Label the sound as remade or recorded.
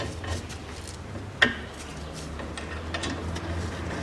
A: recorded